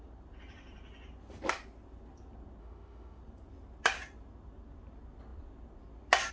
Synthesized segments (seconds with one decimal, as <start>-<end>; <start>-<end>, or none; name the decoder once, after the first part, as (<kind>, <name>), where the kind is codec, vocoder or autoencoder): 2.6-3.2 (autoencoder, DAC-VAE)